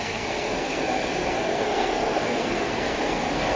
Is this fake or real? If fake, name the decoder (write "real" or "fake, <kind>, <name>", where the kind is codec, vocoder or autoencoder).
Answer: fake, codec, SNAC